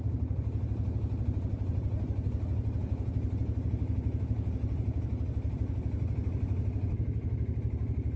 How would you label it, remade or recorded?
recorded